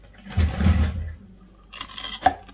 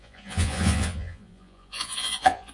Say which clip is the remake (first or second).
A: second